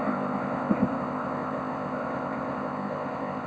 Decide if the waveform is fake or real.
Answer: fake